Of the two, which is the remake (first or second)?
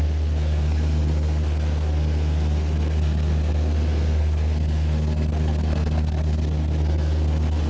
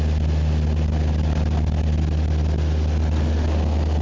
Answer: first